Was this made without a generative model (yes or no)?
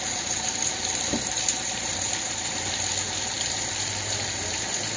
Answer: no